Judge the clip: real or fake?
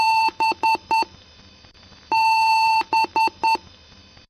fake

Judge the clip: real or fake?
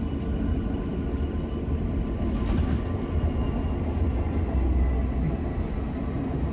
real